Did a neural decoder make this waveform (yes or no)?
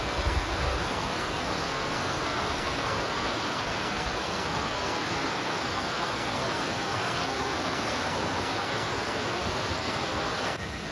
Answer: yes